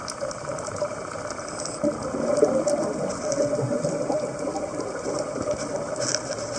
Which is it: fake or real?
real